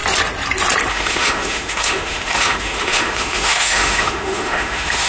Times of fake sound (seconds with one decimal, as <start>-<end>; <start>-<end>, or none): 0.9-5.1